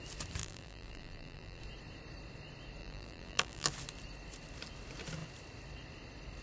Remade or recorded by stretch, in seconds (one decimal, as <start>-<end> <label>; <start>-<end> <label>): 0.0-0.4 recorded; 0.4-1.6 remade; 1.6-2.8 recorded; 2.8-3.7 remade; 3.7-6.4 recorded